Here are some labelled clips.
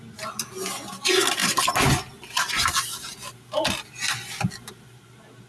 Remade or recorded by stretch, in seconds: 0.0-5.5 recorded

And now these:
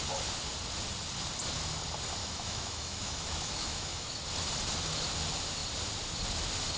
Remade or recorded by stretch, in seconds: 0.0-2.2 recorded; 2.2-4.2 remade; 4.2-6.8 recorded

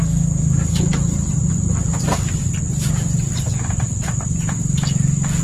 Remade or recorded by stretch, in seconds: 0.0-5.4 recorded

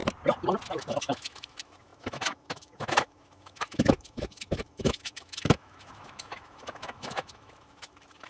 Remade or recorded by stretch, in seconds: 0.0-0.7 recorded; 0.7-8.3 remade